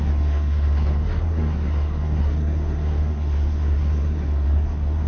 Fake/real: fake